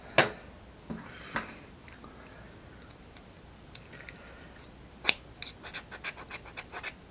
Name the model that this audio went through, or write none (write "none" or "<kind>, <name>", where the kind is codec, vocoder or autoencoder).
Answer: none